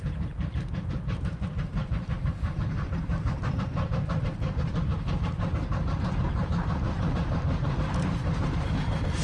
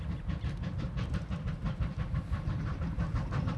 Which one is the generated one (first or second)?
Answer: first